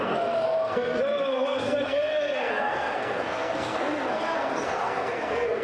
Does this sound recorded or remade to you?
remade